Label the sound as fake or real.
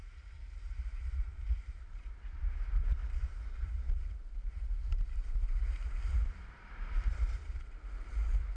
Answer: fake